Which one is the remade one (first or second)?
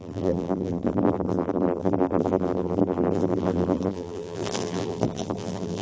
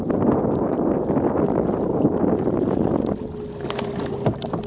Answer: first